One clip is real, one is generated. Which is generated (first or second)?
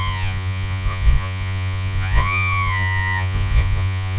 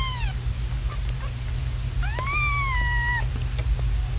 first